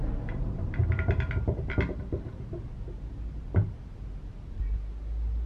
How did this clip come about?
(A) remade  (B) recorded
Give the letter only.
B